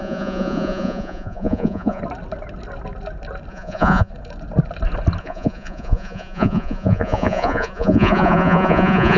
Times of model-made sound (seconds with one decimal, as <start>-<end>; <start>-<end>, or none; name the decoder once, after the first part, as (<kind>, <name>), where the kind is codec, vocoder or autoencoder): 0.0-2.0 (vocoder, Vocos); 3.5-4.1; 5.2-9.2